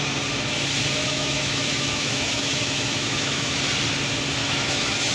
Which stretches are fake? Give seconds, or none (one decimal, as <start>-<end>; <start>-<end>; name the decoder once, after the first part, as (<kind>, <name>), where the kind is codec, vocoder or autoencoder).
1.0-3.6 (autoencoder, DAC-VAE); 4.4-5.1